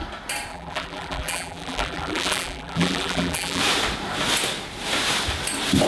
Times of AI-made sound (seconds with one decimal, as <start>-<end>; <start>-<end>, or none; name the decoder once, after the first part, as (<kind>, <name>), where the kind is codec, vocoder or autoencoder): 0.5-3.6 (vocoder, BigVGAN v2)